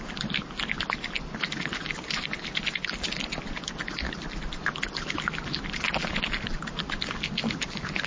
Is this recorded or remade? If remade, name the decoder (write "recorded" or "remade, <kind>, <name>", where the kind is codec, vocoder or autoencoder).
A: recorded